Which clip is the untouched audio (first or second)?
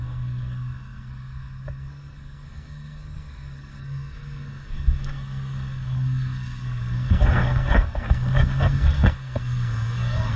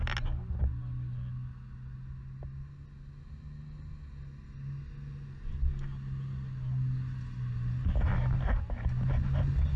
second